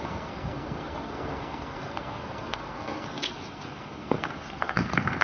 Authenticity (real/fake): fake